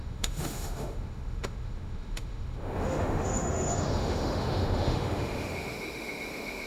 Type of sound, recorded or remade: remade